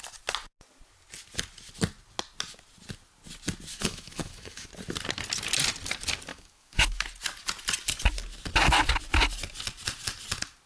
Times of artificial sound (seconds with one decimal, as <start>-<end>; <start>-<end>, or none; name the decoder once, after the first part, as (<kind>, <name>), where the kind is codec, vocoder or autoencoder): 3.7-4.7 (autoencoder, DAC-VAE); 6.3-7.0